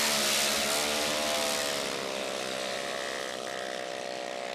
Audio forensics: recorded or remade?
recorded